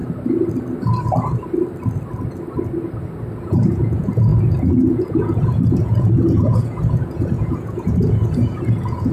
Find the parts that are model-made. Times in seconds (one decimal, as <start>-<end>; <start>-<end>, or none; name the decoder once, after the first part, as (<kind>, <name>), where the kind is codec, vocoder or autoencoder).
3.4-9.1 (vocoder, Vocos)